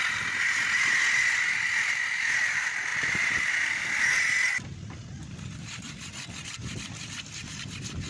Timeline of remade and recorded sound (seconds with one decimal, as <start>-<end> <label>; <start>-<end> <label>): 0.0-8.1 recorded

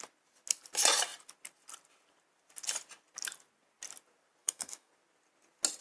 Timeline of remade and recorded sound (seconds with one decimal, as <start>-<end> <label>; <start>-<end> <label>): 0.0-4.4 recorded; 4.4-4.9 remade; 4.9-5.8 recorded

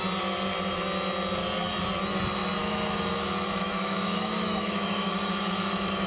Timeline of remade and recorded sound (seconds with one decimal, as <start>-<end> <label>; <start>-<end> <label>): 0.0-2.6 recorded; 2.6-6.1 remade

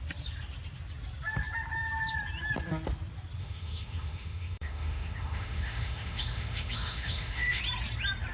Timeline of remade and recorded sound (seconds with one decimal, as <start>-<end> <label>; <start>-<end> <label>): 0.0-3.4 recorded; 3.4-7.6 remade; 7.6-8.3 recorded

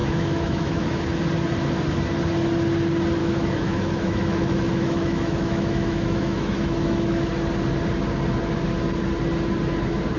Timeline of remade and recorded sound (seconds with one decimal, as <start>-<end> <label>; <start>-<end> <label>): 0.0-1.0 remade; 1.0-3.2 recorded; 3.2-7.3 remade; 7.3-10.2 recorded

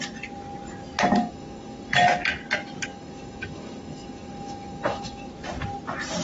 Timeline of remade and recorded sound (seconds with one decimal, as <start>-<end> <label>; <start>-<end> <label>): 0.0-1.2 recorded; 1.2-2.0 remade; 2.0-2.9 recorded; 2.9-5.3 remade; 5.3-6.2 recorded

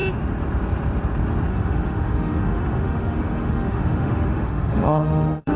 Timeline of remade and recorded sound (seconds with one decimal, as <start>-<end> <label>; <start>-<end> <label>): 0.0-1.5 recorded; 1.5-5.6 remade